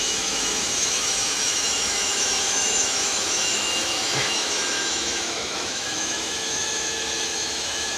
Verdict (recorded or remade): remade